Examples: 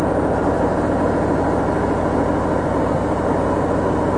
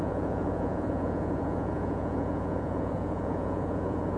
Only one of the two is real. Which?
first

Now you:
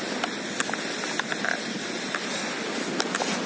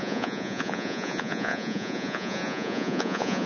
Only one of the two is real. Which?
first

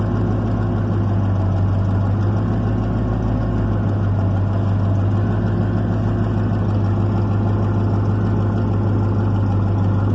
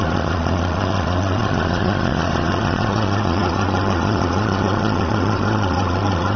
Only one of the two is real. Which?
first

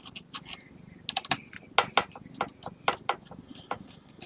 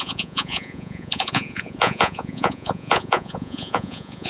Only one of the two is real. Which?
first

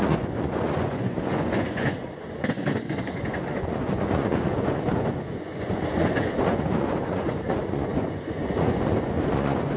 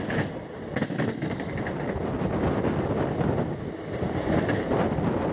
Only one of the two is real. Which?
second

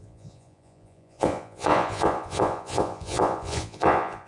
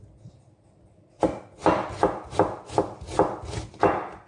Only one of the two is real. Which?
second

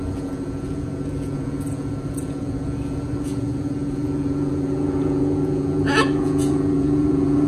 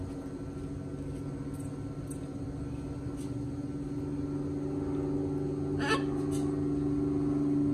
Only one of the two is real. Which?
second